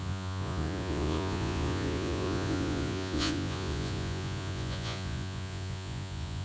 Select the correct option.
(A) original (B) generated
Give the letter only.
B